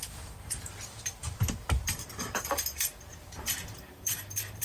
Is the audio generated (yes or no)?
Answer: yes